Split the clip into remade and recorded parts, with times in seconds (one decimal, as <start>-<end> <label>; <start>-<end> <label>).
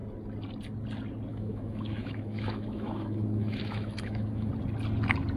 0.0-1.3 recorded; 1.3-4.5 remade; 4.5-5.4 recorded